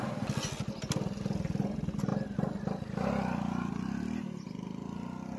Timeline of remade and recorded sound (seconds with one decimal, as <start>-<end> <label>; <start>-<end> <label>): 0.0-5.4 recorded